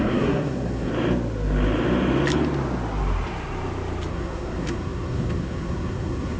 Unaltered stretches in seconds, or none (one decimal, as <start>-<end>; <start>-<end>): 0.9-4.1

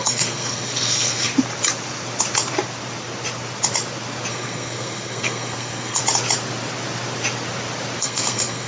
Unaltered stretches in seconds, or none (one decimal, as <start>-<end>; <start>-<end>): 1.3-4.3; 6.0-8.0